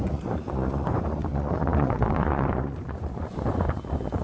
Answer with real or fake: fake